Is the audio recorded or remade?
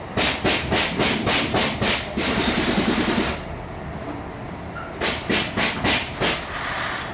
recorded